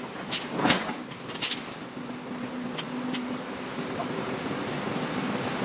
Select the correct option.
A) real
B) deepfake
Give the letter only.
A